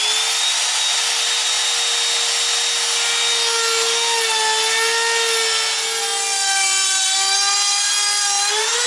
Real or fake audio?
real